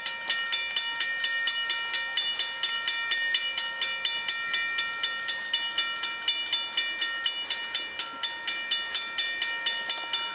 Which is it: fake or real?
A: real